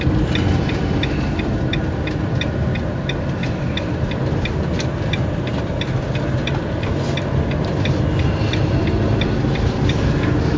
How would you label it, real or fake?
real